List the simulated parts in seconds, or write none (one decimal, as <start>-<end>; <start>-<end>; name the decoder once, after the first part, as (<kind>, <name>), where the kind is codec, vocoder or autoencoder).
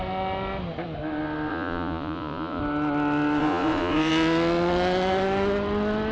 1.5-2.6 (vocoder, Vocos); 3.4-4.1